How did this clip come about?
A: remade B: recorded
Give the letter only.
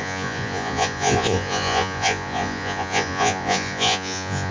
A